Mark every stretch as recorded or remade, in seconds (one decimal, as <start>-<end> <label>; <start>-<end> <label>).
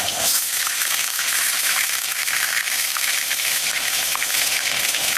0.0-5.2 remade